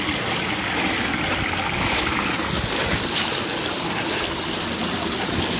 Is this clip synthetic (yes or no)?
no